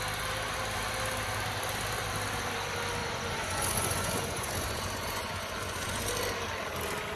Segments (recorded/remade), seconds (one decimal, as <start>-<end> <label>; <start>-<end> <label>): 0.0-3.0 recorded; 3.0-6.1 remade; 6.1-7.2 recorded